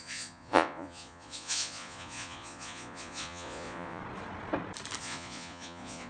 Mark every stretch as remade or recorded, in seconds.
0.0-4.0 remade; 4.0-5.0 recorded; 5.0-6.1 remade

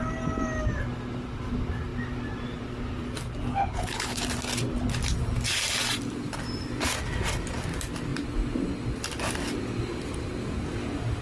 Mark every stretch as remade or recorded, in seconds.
0.0-3.5 recorded; 3.5-4.2 remade; 4.2-11.2 recorded